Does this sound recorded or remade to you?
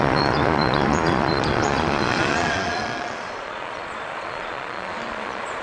remade